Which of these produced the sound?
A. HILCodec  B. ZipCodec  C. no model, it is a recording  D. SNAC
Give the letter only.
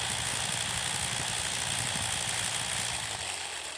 C